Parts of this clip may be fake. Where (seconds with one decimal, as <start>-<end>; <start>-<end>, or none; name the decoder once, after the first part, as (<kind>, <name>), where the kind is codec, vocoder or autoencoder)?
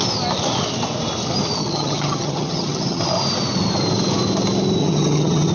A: 1.6-3.0 (vocoder, HiFi-GAN); 4.8-5.5